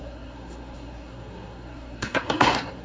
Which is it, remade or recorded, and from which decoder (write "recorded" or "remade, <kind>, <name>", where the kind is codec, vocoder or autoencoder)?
remade, codec, SNAC